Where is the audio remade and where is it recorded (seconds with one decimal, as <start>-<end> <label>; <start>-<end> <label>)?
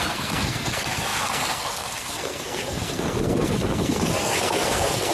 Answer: 0.0-5.1 remade